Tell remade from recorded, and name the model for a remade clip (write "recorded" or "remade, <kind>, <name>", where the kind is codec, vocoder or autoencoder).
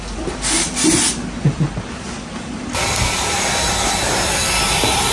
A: recorded